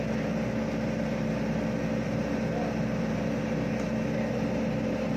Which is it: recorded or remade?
recorded